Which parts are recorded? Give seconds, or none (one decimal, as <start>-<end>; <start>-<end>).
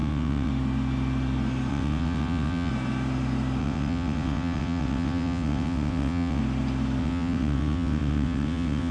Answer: 0.5-1.7; 2.7-3.6; 6.4-7.0